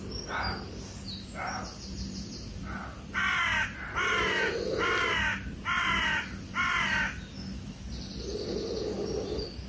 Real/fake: real